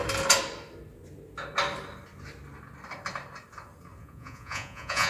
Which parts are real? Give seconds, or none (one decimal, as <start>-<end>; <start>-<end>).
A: 0.0-4.0